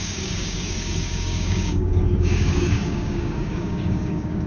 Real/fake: fake